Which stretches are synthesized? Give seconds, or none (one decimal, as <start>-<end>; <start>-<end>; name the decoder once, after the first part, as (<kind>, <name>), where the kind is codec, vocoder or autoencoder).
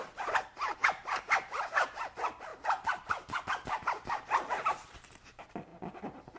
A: 0.0-6.4 (vocoder, BigVGAN v2)